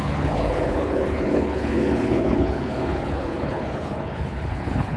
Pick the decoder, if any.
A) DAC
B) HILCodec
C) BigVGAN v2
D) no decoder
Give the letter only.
B